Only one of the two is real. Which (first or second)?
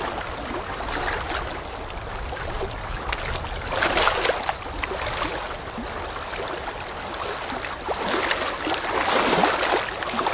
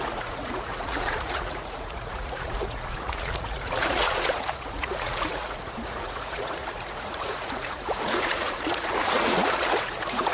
first